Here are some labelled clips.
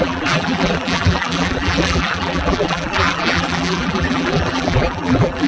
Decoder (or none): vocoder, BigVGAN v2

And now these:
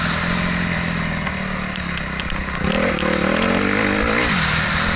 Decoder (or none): none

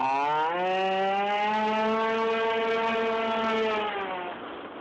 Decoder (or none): none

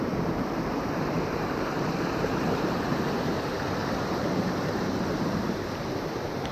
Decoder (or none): vocoder, BigVGAN v2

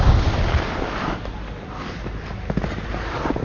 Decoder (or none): none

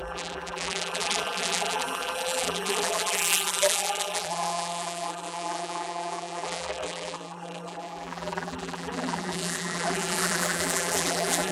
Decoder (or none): vocoder, BigVGAN v2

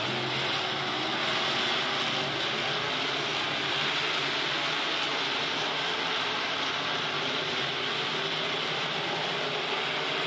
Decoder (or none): none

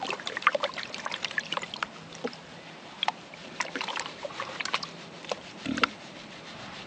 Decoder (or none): vocoder, BigVGAN v2